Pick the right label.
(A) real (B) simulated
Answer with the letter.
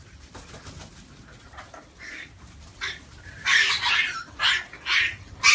A